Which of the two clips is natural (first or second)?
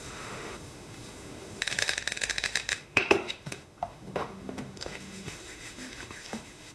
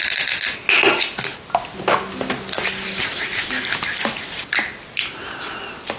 second